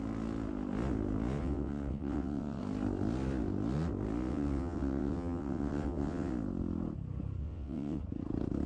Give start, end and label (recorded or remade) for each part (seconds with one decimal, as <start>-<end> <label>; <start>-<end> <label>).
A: 0.0-1.4 recorded; 1.4-2.6 remade; 2.6-4.3 recorded; 4.3-6.3 remade; 6.3-7.4 recorded; 7.4-8.0 remade; 8.0-8.7 recorded